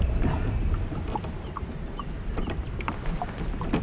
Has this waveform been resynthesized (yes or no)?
no